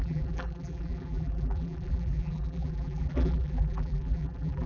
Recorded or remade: remade